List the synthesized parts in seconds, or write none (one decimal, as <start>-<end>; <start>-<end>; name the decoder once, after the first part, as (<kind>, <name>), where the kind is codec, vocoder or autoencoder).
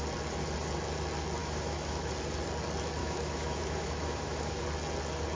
1.4-2.1 (autoencoder, DAC-VAE); 3.0-4.6